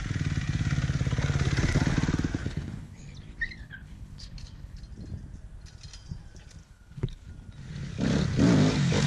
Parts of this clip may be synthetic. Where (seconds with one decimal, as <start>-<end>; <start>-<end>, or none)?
2.4-3.0; 3.6-4.8; 6.6-7.3